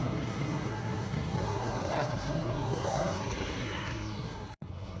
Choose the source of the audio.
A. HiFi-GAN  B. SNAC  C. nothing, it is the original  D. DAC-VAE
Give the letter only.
B